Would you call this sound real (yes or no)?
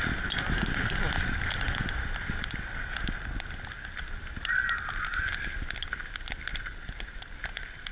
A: yes